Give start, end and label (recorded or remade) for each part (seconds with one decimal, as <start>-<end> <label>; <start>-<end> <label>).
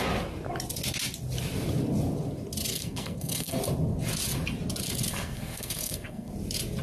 0.0-2.7 recorded; 2.7-3.6 remade; 3.6-5.1 recorded; 5.1-6.3 remade; 6.3-6.8 recorded